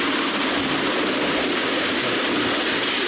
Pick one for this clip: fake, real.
real